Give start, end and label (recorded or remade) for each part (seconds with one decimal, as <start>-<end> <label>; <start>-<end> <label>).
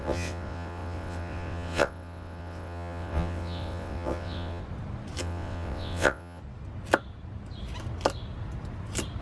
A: 0.0-4.6 remade; 4.6-5.2 recorded; 5.2-6.4 remade; 6.4-9.2 recorded